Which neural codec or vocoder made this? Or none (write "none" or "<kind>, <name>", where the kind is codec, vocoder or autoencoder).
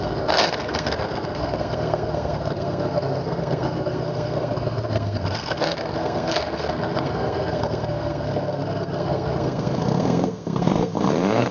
codec, SNAC